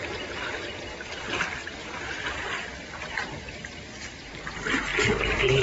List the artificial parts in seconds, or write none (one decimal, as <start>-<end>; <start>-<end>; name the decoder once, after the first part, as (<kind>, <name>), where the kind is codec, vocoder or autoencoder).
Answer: none